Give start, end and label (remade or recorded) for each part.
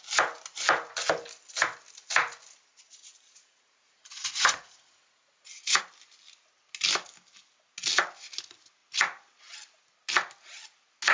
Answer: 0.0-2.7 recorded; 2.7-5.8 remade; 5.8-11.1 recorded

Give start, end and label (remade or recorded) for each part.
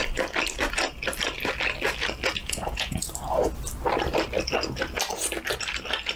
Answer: 0.0-2.4 recorded; 2.4-3.1 remade; 3.1-6.2 recorded